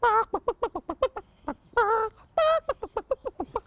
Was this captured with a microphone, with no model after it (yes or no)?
yes